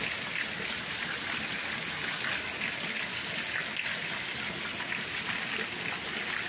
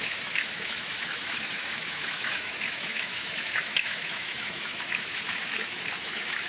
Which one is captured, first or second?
first